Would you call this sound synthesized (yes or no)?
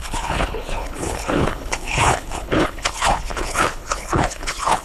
yes